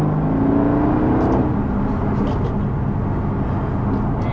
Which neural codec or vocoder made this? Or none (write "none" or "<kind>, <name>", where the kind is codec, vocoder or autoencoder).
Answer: none